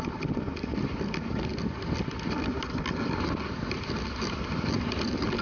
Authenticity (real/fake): real